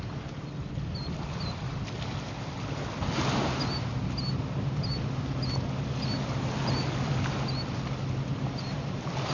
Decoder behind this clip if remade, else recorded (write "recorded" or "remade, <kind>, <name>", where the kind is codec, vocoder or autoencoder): recorded